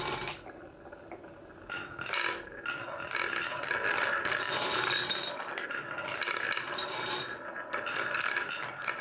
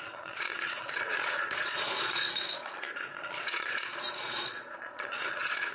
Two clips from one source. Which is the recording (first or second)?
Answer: first